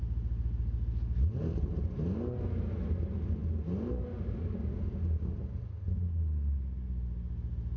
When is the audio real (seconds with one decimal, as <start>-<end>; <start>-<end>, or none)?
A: 0.0-7.8